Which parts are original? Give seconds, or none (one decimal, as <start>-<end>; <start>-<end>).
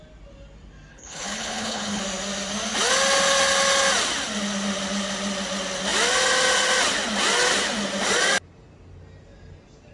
0.0-0.9; 2.0-9.9